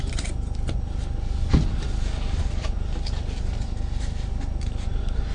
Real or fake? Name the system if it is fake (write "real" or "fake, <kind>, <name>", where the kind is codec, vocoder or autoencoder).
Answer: real